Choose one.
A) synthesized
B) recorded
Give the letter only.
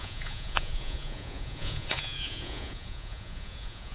A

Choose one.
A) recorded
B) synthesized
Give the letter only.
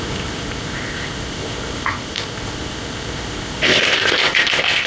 B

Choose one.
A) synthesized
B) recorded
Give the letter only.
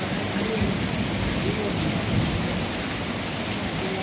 B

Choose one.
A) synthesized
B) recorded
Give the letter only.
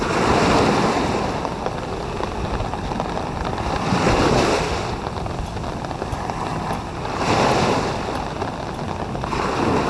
B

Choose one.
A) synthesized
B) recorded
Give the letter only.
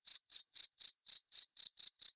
A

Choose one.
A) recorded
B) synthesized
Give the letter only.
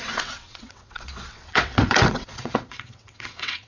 B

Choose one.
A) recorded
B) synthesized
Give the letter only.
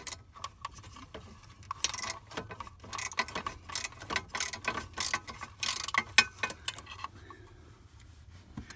A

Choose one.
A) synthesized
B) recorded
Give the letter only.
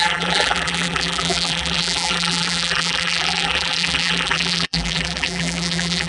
A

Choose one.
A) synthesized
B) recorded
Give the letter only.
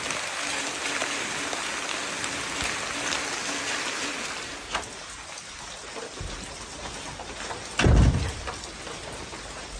B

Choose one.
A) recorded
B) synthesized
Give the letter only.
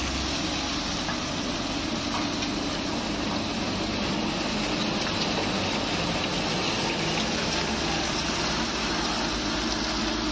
A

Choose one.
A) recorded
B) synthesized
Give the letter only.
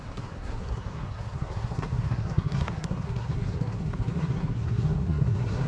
B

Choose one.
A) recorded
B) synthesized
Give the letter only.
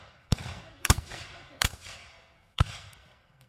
B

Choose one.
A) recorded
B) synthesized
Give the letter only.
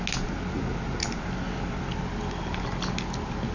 A